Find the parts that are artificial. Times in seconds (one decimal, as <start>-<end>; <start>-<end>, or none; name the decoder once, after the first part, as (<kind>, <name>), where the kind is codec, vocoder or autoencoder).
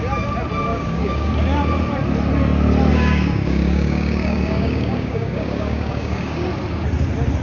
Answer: 0.7-1.3 (codec, DAC); 2.9-6.5